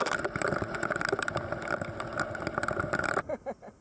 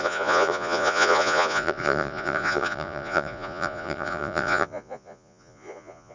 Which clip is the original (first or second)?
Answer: first